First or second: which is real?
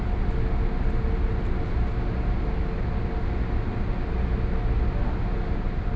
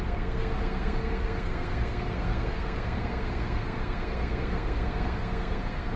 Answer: first